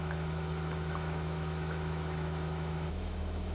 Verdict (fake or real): fake